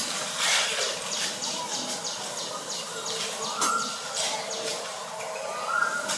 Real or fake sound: real